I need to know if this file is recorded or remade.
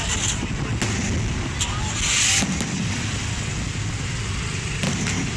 recorded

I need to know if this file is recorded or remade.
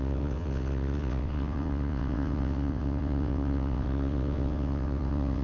remade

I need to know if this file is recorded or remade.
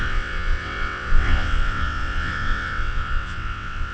remade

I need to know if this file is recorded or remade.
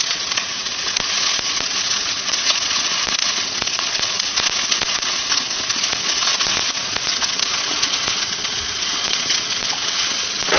remade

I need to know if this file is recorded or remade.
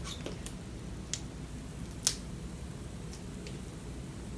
recorded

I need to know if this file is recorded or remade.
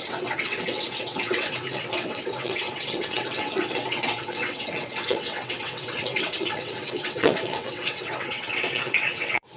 remade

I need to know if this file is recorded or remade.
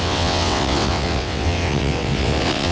remade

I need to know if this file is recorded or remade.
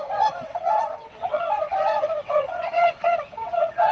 remade